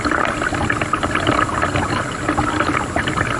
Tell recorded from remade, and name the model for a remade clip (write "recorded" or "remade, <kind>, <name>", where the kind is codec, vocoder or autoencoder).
recorded